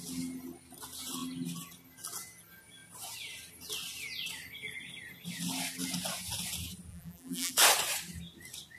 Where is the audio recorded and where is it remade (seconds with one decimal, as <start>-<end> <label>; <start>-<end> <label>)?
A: 0.0-6.9 recorded; 6.9-7.5 remade; 7.5-8.8 recorded